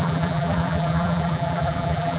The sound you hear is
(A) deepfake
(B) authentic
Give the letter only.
A